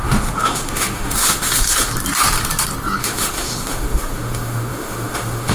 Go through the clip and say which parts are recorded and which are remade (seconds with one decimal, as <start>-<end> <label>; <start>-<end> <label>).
0.0-1.9 remade; 1.9-3.0 recorded; 3.0-5.5 remade

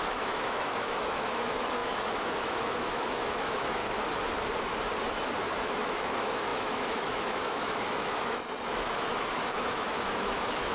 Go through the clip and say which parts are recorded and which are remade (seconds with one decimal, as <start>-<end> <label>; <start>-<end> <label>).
0.0-3.8 remade; 3.8-5.6 recorded; 5.6-10.7 remade

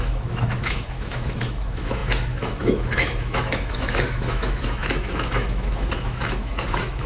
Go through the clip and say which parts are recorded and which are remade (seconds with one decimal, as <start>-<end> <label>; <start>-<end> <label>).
0.0-7.1 remade

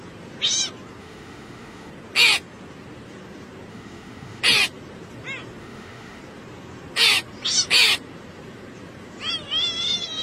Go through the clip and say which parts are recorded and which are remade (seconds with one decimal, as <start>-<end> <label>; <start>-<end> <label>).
0.0-1.0 recorded; 1.0-1.9 remade; 1.9-3.7 recorded; 3.7-4.4 remade; 4.4-5.6 recorded; 5.6-6.2 remade; 6.2-10.2 recorded

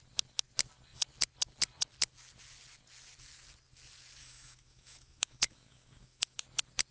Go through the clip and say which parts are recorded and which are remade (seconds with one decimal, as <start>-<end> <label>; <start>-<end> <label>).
0.0-4.2 recorded; 4.2-6.4 remade; 6.4-6.9 recorded

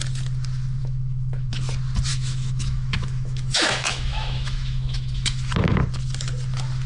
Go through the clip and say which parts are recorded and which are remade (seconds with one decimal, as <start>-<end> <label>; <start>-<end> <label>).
0.0-0.8 recorded; 0.8-1.5 remade; 1.5-2.1 recorded; 2.1-5.5 remade; 5.5-6.9 recorded

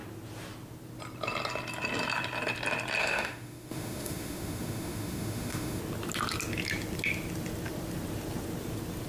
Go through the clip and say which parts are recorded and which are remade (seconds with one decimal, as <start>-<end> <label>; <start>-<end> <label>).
0.0-3.0 recorded; 3.0-5.8 remade; 5.8-9.1 recorded